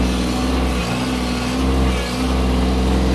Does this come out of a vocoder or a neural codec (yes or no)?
no